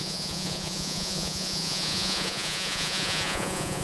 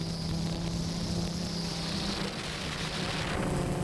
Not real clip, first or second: first